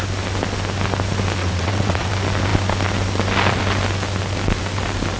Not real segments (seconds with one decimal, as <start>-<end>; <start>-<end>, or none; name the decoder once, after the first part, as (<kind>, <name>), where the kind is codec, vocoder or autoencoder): 1.4-2.1 (vocoder, WaveNeXt)